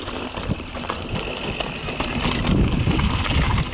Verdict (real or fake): real